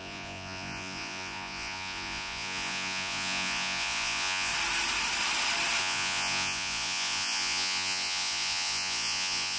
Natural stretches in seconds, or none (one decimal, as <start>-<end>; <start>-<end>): 4.5-5.8